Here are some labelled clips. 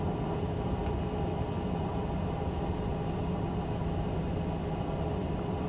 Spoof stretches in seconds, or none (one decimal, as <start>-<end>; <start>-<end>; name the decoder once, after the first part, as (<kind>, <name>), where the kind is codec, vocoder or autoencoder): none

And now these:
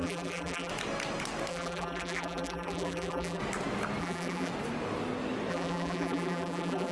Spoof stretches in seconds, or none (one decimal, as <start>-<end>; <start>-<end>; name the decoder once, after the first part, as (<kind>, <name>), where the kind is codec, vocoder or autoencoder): 0.0-0.7 (vocoder, BigVGAN v2); 1.5-3.4; 4.0-4.5; 5.5-6.9

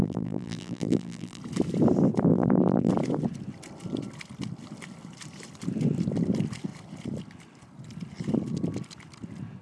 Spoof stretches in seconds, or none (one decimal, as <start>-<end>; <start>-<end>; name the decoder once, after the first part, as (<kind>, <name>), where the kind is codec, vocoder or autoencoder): 0.0-1.4 (vocoder, BigVGAN v2); 2.3-2.9

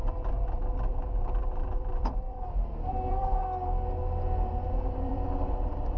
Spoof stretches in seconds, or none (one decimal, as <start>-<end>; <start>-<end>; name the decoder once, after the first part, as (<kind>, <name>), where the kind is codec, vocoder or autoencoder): 0.9-3.4 (vocoder, BigVGAN v2); 5.0-6.0

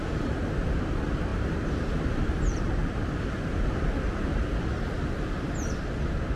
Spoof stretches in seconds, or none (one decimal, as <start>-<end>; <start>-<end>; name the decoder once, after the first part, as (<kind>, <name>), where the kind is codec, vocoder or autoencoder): 0.0-4.3 (vocoder, BigVGAN v2)